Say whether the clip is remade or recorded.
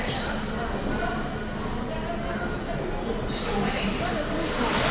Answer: recorded